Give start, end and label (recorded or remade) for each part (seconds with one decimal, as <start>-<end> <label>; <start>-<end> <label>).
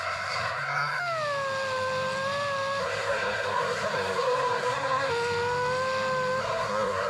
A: 0.0-1.0 remade; 1.0-2.8 recorded; 2.8-5.1 remade; 5.1-6.4 recorded; 6.4-7.1 remade